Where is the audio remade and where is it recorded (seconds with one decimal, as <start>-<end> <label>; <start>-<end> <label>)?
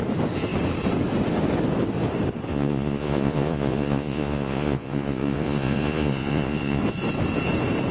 0.0-2.5 recorded; 2.5-6.8 remade; 6.8-7.9 recorded